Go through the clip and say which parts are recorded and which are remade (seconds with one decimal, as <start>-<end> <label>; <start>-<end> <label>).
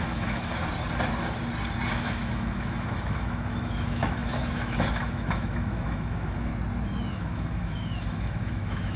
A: 0.0-0.6 remade; 0.6-1.9 recorded; 1.9-6.5 remade; 6.5-7.2 recorded; 7.2-9.0 remade